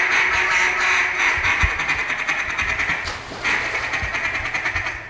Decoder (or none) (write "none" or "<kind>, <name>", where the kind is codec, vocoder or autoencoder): none